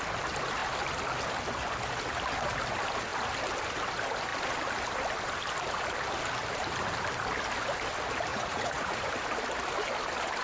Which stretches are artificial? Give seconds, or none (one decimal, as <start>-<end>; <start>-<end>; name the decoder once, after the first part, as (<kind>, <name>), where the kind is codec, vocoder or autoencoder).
8.3-9.1 (vocoder, Vocos)